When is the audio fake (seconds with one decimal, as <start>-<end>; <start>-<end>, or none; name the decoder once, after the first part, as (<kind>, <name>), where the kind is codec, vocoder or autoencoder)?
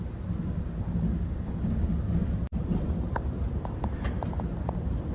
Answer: 2.2-4.3 (vocoder, BigVGAN v2)